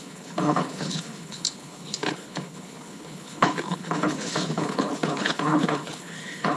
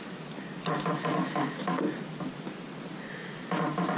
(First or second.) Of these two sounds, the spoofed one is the first